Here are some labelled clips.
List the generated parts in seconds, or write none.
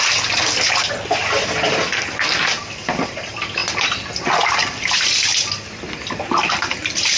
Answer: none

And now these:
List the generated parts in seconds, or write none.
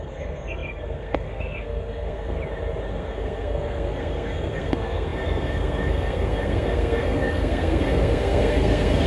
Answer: 0.0-2.4 (codec, SNAC); 2.9-9.1